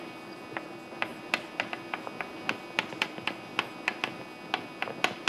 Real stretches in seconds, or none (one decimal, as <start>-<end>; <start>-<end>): 0.0-5.3